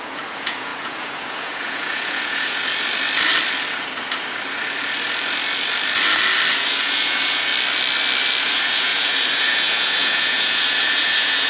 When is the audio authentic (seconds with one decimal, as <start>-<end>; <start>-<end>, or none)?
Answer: 2.6-6.5; 7.5-8.4